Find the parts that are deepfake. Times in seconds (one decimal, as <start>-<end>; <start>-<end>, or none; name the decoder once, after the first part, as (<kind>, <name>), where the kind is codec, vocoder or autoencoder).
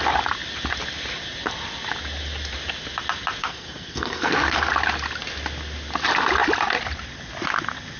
3.4-4.7 (codec, SNAC)